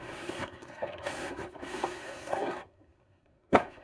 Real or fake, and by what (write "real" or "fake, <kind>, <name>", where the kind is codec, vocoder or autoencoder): fake, codec, SNAC